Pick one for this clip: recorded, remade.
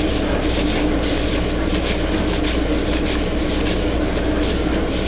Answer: recorded